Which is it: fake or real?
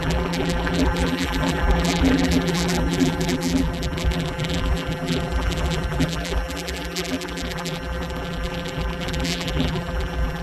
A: fake